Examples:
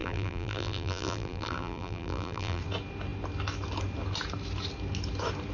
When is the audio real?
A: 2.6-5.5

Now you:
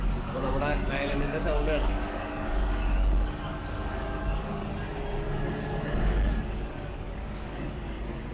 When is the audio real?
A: 4.7-5.2